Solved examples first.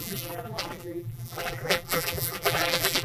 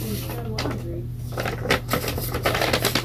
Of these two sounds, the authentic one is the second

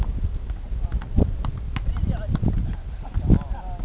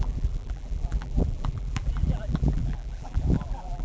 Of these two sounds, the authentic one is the first